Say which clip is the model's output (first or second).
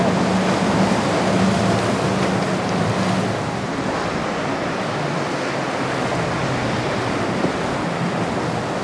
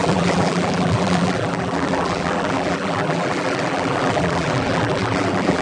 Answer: second